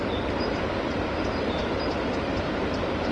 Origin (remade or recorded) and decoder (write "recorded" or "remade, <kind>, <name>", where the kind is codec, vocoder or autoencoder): remade, vocoder, BigVGAN v2